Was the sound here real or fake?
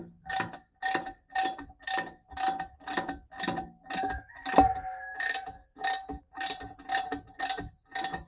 real